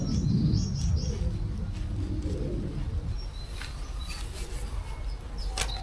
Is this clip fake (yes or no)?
no